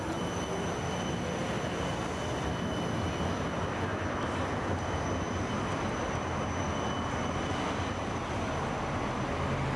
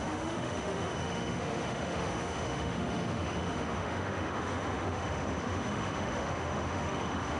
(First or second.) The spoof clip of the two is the second